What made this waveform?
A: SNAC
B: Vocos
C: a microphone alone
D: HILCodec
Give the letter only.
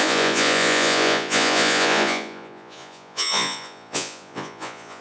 B